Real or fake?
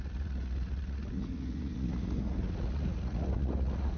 fake